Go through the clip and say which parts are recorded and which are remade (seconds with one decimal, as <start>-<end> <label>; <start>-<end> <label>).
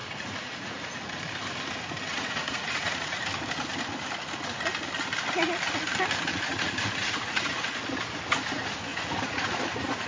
0.0-1.2 remade; 1.2-2.1 recorded; 2.1-3.2 remade; 3.2-6.3 recorded; 6.3-7.8 remade; 7.8-8.9 recorded; 8.9-9.6 remade; 9.6-10.1 recorded